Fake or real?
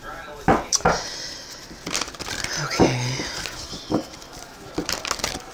real